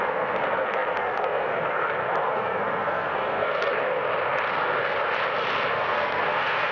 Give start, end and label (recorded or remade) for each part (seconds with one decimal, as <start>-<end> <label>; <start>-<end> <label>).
0.0-3.7 remade; 3.7-5.7 recorded; 5.7-6.7 remade